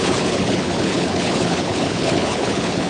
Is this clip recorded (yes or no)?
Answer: no